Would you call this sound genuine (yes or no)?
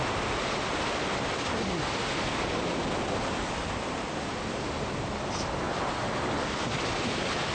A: yes